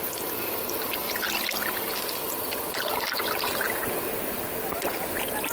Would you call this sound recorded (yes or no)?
yes